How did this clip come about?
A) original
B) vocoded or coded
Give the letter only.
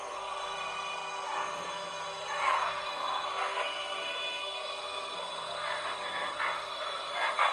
B